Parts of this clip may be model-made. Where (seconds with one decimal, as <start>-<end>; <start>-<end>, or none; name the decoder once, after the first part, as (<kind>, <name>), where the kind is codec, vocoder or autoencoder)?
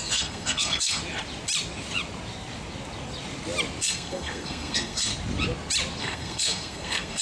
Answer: 0.0-1.0 (codec, SNAC); 3.8-5.1; 6.0-7.2